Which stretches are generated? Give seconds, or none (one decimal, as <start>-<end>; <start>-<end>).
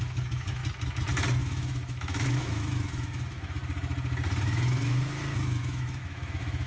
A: 0.0-0.6; 1.4-3.6; 4.4-6.7